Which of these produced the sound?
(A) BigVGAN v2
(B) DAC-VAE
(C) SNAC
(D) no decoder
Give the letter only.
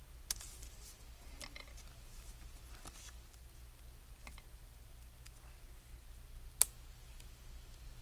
D